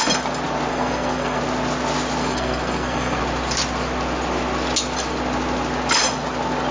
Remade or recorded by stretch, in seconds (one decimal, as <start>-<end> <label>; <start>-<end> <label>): 0.0-0.7 recorded; 0.7-1.4 remade; 1.4-2.2 recorded; 2.2-3.2 remade; 3.2-6.7 recorded